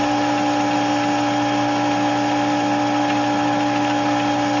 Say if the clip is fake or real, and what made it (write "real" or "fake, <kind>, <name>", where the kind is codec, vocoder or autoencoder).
real